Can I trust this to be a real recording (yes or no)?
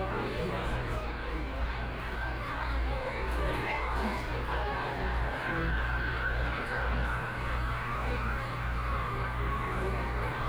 no